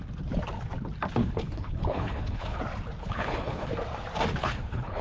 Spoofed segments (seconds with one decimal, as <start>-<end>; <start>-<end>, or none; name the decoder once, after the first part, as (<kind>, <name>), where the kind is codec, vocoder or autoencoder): 1.2-2.6 (codec, HILCodec); 3.0-3.7; 4.4-5.0